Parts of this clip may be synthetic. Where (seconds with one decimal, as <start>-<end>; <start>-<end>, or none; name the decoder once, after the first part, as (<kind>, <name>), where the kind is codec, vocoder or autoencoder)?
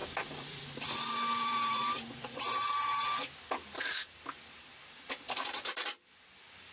0.0-4.0 (vocoder, BigVGAN v2)